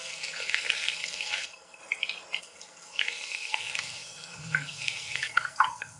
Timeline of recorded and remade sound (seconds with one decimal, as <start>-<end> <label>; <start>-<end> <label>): 0.0-1.8 remade; 1.8-2.4 recorded; 2.4-6.0 remade